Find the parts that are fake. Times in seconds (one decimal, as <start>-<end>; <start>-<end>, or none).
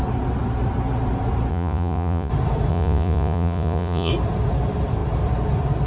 1.5-2.3; 2.7-4.1